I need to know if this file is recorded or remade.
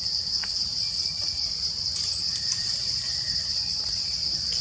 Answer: recorded